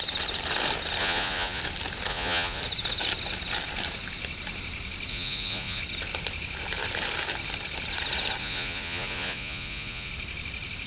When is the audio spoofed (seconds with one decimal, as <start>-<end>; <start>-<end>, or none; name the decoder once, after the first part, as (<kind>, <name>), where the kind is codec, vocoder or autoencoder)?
1.0-1.6 (vocoder, Vocos); 2.1-2.6; 5.1-5.8; 8.4-10.1